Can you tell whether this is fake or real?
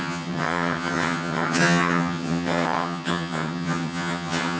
fake